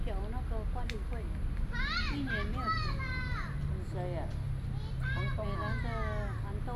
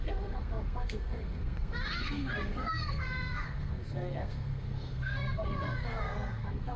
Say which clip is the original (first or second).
first